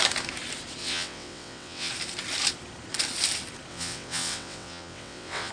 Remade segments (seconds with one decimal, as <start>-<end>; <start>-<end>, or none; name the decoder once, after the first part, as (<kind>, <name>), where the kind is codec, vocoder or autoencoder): 0.8-1.9 (vocoder, WaveNeXt); 3.7-5.5